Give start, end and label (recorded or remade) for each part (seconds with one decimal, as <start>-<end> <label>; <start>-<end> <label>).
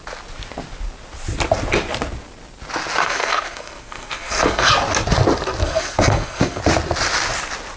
0.0-3.0 recorded; 3.0-4.7 remade; 4.7-5.6 recorded; 5.6-6.6 remade; 6.6-7.8 recorded